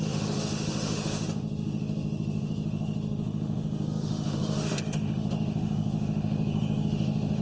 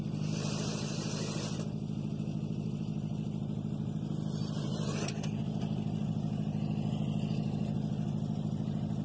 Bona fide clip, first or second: second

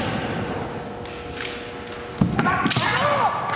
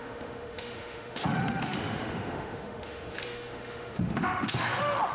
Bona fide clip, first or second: first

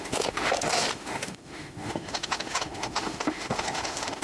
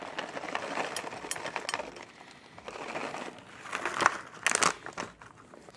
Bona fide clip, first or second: second